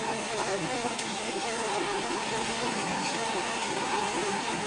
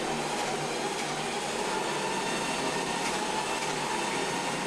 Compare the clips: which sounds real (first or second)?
second